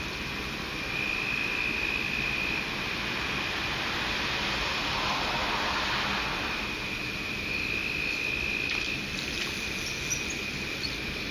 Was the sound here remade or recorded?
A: recorded